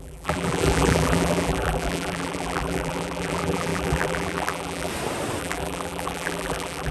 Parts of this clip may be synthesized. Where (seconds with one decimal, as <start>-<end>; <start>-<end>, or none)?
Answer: 0.0-4.9; 5.4-6.9